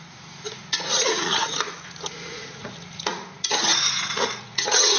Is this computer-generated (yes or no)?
yes